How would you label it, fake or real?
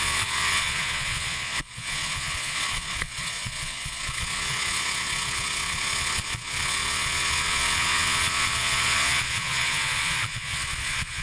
fake